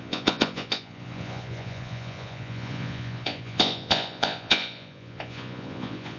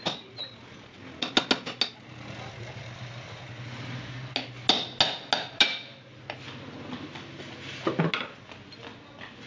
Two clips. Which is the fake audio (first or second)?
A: first